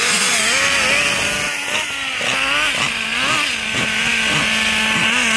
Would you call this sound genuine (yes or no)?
yes